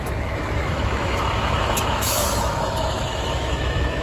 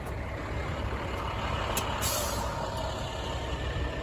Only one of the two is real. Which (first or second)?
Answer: second